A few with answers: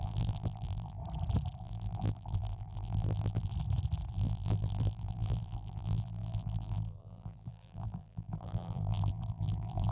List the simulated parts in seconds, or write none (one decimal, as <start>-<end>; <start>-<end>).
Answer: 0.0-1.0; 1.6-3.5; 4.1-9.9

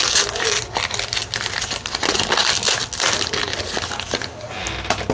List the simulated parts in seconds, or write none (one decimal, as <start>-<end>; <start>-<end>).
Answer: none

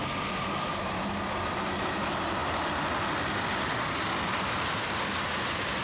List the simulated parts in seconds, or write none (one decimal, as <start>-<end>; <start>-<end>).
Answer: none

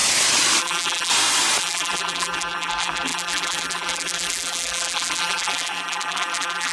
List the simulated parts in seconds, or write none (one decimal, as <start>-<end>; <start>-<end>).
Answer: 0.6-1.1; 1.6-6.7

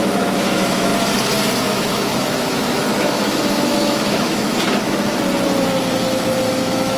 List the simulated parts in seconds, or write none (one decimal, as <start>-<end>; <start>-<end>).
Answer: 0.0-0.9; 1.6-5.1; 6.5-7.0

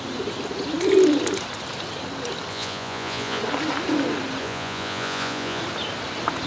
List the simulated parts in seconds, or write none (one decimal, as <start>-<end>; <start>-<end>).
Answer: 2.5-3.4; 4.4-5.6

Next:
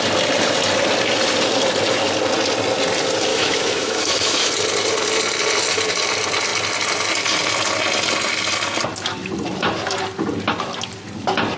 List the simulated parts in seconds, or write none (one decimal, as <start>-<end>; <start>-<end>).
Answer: 3.3-4.5

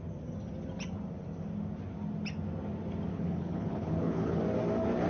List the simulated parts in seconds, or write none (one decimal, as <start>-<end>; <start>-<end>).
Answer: 3.1-4.4